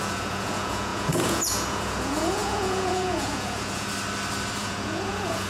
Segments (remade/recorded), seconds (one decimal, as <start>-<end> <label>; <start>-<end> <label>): 0.0-3.9 remade; 3.9-4.6 recorded; 4.6-5.5 remade